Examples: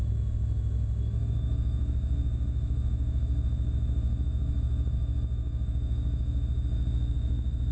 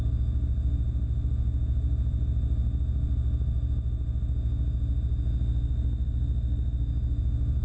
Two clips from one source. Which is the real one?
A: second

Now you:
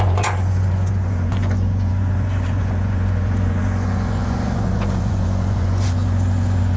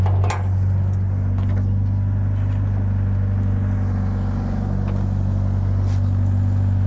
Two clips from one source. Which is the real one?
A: second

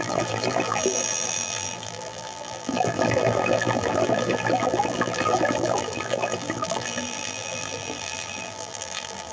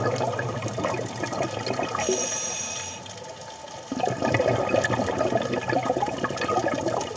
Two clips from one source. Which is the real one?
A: second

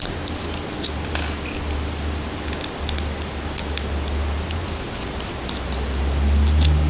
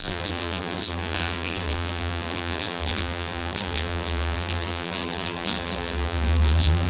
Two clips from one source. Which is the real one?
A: first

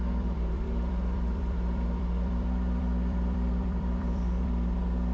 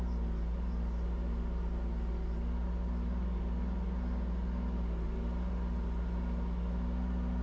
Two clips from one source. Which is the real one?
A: second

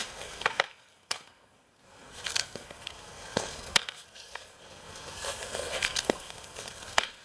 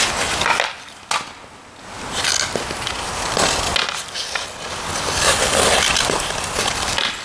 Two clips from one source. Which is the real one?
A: second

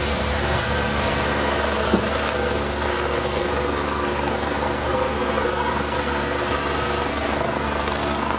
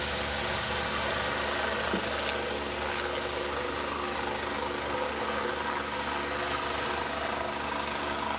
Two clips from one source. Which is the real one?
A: second